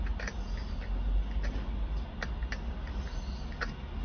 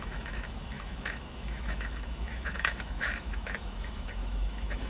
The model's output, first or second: second